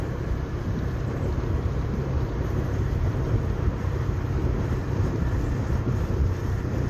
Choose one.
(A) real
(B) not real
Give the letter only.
B